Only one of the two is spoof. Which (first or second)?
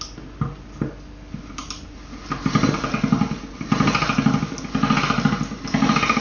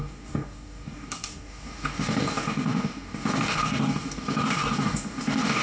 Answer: second